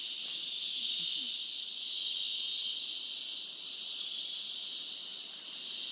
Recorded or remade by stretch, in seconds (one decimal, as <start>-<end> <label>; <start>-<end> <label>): 0.0-5.9 recorded